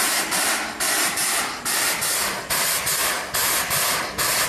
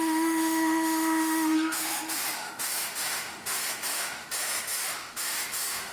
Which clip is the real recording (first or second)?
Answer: first